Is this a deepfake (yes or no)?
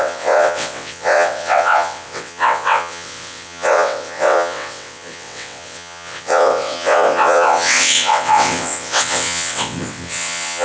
yes